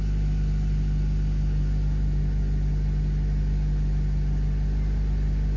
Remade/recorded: recorded